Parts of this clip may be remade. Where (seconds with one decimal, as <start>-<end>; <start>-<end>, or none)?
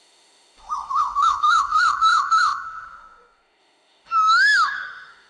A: 0.0-5.3